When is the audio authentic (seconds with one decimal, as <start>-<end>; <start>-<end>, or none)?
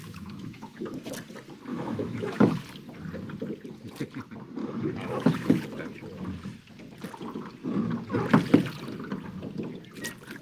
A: 1.1-1.7; 2.6-4.6; 5.6-10.4